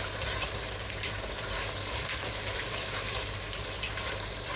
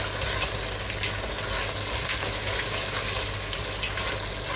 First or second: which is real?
second